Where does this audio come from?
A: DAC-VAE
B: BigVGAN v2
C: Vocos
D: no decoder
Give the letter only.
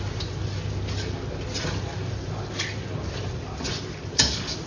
D